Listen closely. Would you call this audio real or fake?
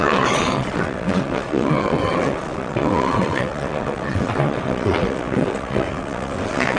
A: fake